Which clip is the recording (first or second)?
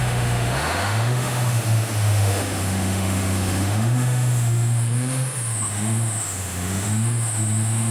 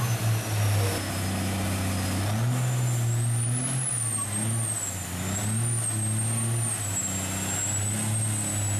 second